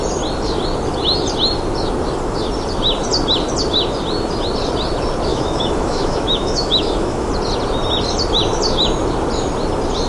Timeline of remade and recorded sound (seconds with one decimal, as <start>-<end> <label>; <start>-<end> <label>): 0.0-5.3 recorded; 5.3-7.3 remade; 7.3-10.1 recorded